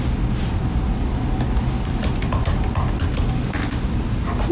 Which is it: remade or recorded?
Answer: recorded